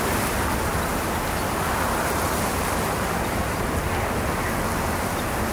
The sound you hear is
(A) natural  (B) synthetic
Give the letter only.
A